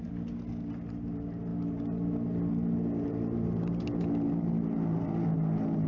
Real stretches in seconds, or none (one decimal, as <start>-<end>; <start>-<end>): 0.0-5.9

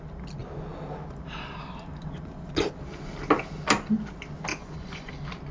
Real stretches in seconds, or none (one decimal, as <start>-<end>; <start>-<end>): 0.0-4.5; 5.1-5.5

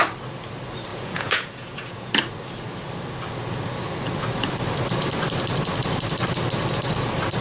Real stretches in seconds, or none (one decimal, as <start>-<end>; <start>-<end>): 0.0-0.9; 2.1-7.4

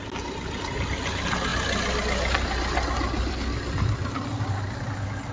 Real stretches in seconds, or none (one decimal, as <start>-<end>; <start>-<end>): 0.0-5.3